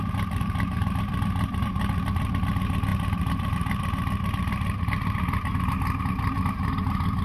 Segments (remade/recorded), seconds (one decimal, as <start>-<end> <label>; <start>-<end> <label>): 0.0-7.2 recorded